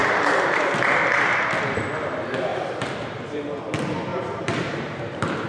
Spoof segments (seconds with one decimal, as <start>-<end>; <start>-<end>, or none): 0.0-0.7; 2.5-3.6; 4.1-5.5